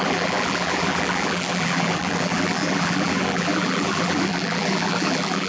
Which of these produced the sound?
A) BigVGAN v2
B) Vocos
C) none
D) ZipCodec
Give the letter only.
A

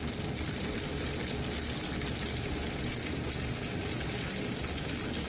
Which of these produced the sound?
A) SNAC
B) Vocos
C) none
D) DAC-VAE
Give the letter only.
C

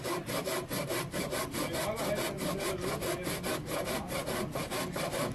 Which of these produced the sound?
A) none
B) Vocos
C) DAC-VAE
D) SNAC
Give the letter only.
A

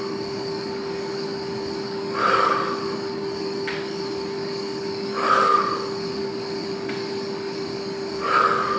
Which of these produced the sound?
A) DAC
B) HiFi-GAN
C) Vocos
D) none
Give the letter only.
A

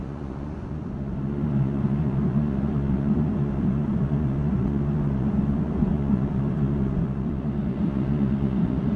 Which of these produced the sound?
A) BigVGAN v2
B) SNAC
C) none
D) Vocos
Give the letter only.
D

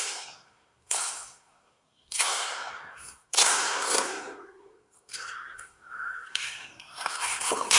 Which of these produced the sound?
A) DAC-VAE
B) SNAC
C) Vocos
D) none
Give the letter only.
B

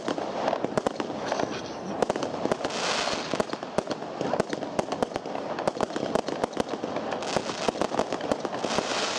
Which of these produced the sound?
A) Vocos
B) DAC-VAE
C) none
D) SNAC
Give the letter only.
C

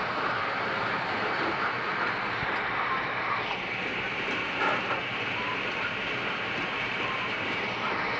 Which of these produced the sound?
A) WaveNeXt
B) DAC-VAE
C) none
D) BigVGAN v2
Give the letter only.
D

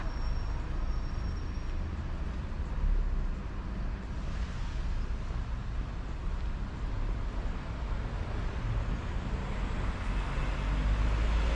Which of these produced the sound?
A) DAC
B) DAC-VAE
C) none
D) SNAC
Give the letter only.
C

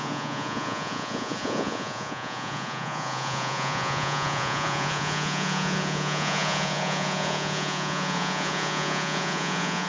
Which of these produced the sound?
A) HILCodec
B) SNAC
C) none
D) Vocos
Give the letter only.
D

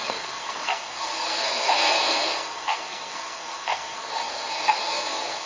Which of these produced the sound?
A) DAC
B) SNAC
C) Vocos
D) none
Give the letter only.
B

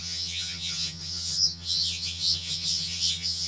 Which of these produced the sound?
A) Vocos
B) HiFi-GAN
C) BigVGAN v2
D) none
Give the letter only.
B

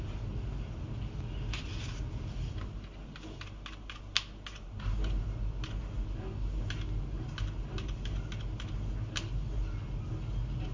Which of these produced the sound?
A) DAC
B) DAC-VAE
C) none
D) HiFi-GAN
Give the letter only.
C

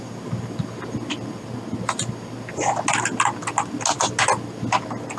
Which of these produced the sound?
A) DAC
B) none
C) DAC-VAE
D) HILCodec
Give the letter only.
B